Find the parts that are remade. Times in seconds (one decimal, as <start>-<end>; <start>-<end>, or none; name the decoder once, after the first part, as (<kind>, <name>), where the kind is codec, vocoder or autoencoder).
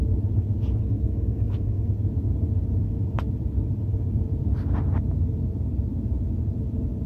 0.8-1.9 (codec, SNAC)